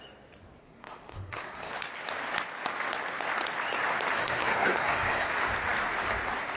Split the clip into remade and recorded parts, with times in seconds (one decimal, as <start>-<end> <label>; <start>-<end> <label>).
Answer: 0.0-0.6 recorded; 0.6-1.7 remade; 1.7-4.2 recorded; 4.2-5.3 remade; 5.3-6.6 recorded